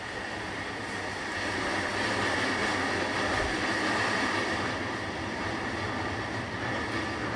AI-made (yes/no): no